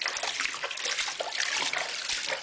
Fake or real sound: real